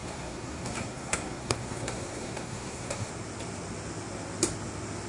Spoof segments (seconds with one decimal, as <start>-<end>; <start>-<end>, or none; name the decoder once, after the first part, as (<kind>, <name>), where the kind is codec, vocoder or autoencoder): 0.0-3.1 (codec, SNAC)